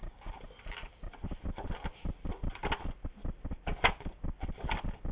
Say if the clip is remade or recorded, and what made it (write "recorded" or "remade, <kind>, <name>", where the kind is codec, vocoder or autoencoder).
recorded